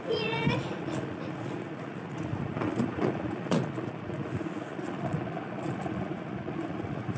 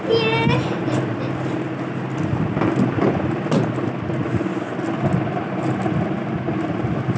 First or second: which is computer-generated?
first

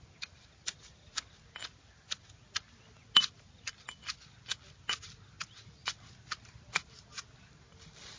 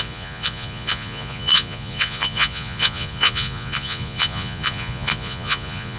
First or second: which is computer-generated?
second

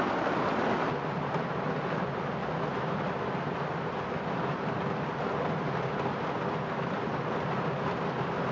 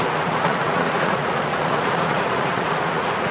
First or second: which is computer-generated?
second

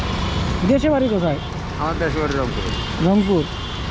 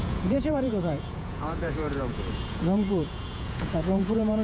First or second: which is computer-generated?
second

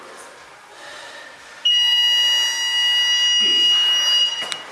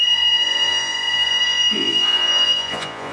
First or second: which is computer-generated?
second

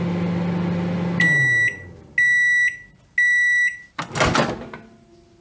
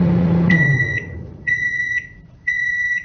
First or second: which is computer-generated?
second